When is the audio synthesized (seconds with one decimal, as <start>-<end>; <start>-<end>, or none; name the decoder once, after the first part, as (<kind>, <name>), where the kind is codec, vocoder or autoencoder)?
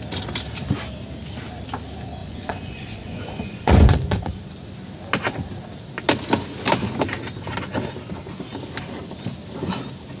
2.2-4.4 (vocoder, Vocos)